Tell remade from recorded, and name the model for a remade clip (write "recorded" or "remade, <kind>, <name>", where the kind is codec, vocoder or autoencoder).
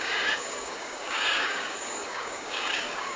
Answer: remade, codec, DAC